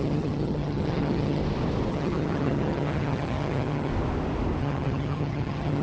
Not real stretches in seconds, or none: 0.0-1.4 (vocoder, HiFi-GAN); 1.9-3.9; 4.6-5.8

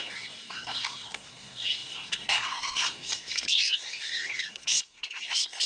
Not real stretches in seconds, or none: 0.0-5.7 (codec, SNAC)